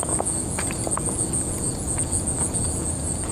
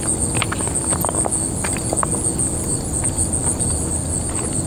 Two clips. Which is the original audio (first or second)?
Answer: second